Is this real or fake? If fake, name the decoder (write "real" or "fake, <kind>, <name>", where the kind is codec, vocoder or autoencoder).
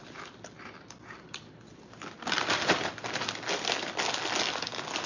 real